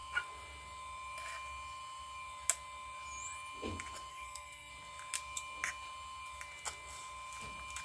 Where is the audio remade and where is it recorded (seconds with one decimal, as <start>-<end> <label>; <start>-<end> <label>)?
0.0-4.1 recorded; 4.1-4.7 remade; 4.7-7.8 recorded